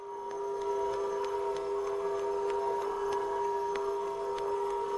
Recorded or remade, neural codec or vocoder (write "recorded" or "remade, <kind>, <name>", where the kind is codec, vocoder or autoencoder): remade, codec, SNAC